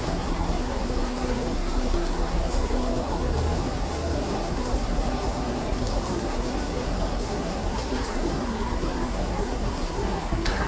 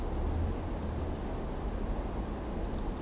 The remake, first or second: first